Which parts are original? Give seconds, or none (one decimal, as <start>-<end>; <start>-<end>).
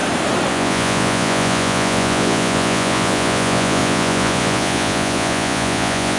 0.0-0.5